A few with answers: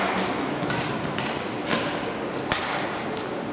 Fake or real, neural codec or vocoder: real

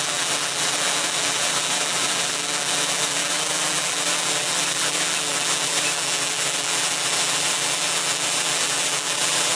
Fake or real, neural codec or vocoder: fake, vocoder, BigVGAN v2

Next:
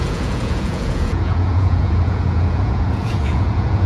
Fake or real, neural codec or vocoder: fake, vocoder, Vocos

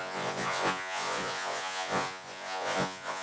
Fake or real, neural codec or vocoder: fake, vocoder, Vocos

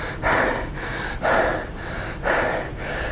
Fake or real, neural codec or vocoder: real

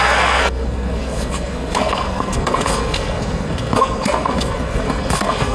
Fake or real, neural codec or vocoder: fake, codec, SNAC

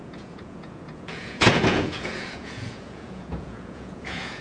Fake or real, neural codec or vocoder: fake, vocoder, Vocos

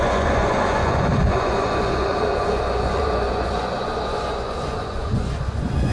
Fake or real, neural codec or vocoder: fake, vocoder, Vocos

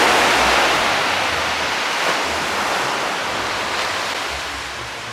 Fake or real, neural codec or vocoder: real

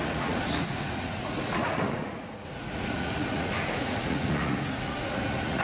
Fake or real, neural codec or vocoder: fake, vocoder, Vocos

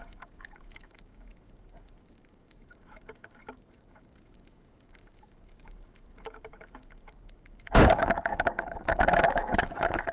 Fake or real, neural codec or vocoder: fake, codec, DAC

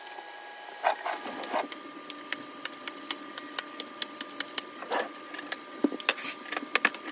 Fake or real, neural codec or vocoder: real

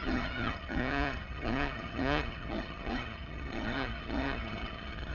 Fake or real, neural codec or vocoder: fake, vocoder, HiFi-GAN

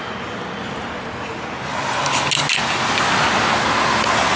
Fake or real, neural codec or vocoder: real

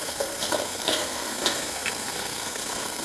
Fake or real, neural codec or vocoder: fake, codec, SNAC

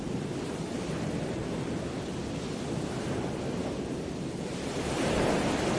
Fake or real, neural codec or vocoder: fake, vocoder, BigVGAN v2